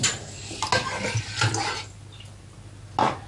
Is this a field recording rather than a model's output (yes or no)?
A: yes